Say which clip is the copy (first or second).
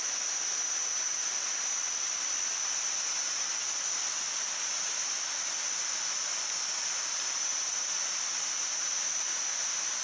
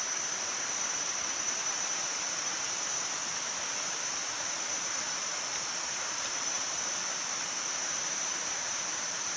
second